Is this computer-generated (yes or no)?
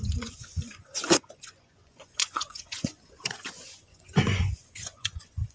yes